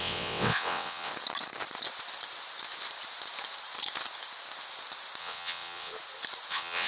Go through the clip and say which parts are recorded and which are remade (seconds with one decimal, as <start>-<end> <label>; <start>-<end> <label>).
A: 0.0-1.1 remade; 1.1-5.2 recorded; 5.2-5.9 remade; 5.9-6.5 recorded; 6.5-6.9 remade